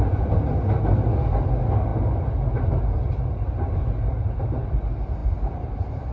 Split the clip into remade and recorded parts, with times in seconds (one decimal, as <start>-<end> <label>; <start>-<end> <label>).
0.0-6.1 recorded